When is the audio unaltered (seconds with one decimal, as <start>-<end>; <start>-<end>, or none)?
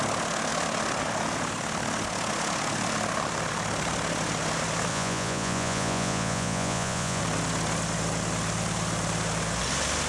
0.0-4.9; 7.2-10.1